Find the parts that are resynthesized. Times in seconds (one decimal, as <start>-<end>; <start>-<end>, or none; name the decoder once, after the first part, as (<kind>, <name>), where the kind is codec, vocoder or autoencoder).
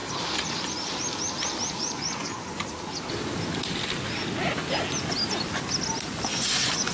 1.8-2.6 (vocoder, Vocos); 6.1-6.9